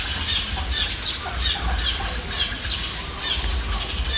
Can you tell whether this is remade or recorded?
recorded